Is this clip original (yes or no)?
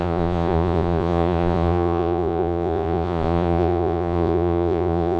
no